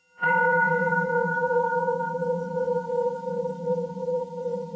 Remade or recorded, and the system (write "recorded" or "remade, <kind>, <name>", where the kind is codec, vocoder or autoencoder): remade, vocoder, HiFi-GAN